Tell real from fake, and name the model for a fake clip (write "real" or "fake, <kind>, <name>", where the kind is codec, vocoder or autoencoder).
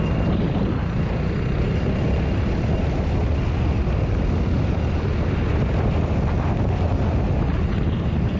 real